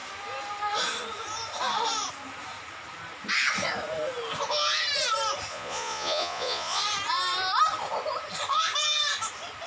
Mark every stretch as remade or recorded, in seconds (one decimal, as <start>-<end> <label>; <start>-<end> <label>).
0.0-5.5 recorded; 5.5-6.8 remade; 6.8-9.7 recorded